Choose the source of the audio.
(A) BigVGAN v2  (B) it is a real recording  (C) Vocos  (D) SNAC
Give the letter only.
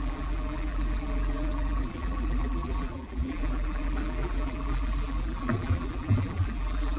A